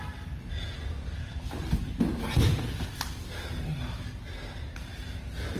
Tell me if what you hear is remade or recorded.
recorded